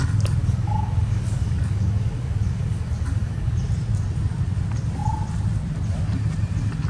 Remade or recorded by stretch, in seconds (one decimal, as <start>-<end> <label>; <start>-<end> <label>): 0.0-0.4 recorded; 0.4-3.5 remade; 3.5-6.9 recorded